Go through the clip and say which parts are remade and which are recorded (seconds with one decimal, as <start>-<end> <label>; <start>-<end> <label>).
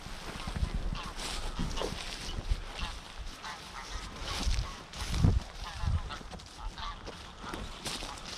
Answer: 0.0-8.4 recorded